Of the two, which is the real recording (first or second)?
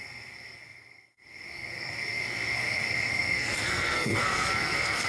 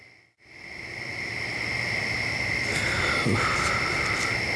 second